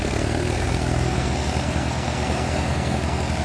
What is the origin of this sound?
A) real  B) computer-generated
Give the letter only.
B